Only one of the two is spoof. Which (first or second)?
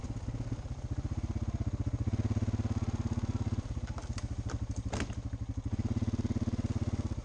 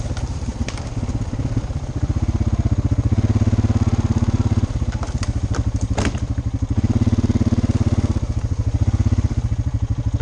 second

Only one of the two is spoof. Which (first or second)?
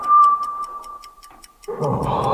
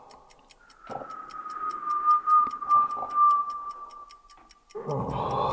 first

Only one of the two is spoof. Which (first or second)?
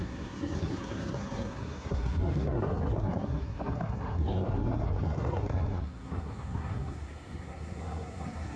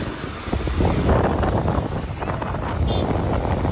first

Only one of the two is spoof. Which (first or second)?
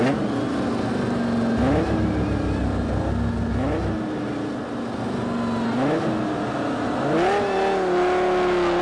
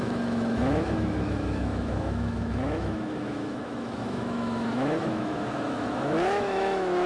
second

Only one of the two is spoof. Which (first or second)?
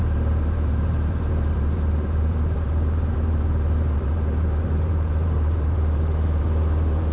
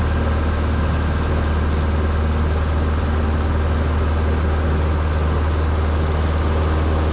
first